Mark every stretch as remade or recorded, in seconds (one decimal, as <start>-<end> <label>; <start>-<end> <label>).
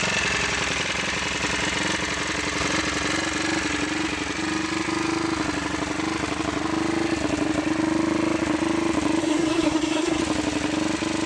0.0-9.2 recorded; 9.2-10.2 remade; 10.2-11.3 recorded